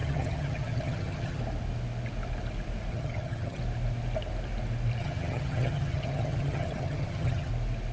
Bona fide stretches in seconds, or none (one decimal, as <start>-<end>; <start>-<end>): 1.4-2.9; 3.6-5.0; 7.5-7.9